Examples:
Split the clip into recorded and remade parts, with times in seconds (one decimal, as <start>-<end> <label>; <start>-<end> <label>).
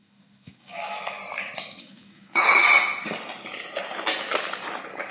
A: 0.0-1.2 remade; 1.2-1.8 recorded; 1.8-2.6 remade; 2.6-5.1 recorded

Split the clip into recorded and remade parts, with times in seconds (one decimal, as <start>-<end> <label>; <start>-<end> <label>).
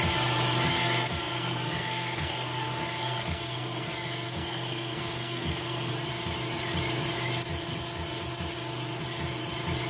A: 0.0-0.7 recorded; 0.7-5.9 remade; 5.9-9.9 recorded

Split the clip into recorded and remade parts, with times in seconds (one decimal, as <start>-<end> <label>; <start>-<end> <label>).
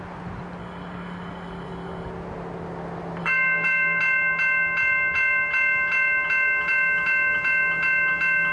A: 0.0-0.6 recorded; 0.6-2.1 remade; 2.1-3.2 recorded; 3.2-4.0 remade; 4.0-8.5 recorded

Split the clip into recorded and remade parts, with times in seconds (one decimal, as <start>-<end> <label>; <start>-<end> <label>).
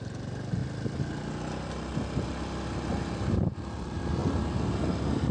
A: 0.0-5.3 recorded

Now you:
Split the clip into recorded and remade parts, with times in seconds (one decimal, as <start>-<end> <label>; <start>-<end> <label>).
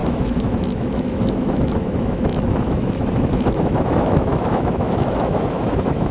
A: 0.0-6.1 remade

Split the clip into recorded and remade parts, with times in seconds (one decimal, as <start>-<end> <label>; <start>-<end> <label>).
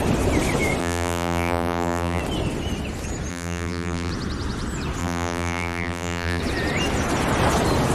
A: 0.0-0.8 recorded; 0.8-2.2 remade; 2.2-3.3 recorded; 3.3-4.1 remade; 4.1-5.0 recorded; 5.0-6.4 remade; 6.4-7.9 recorded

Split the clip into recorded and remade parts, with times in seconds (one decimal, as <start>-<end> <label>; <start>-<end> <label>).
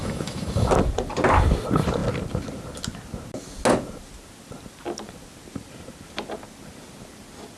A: 0.0-0.7 remade; 0.7-7.6 recorded